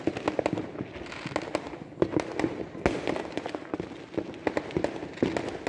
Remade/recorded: recorded